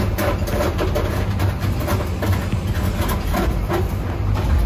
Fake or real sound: real